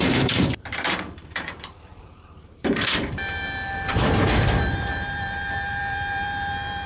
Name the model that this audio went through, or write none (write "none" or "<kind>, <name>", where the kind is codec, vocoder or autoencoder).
vocoder, BigVGAN v2